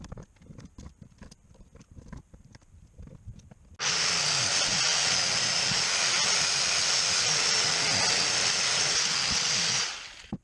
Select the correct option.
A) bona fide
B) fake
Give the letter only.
A